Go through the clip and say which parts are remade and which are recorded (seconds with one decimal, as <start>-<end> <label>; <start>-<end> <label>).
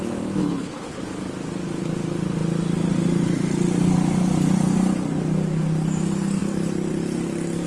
0.0-0.4 recorded; 0.4-1.0 remade; 1.0-7.7 recorded